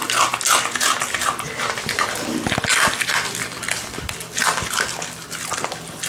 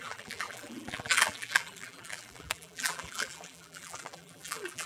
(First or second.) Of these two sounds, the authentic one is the first